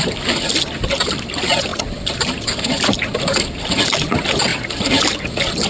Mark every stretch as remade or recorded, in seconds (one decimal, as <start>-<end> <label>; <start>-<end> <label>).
0.0-4.5 remade; 4.5-5.2 recorded; 5.2-5.7 remade